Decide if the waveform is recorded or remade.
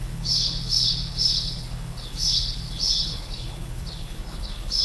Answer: remade